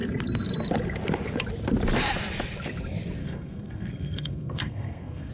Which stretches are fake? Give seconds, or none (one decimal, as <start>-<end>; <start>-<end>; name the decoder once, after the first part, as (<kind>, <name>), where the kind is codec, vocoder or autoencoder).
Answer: 3.2-5.3 (codec, SNAC)